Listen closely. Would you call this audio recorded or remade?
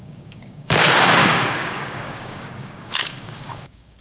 remade